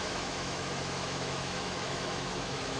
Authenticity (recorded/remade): remade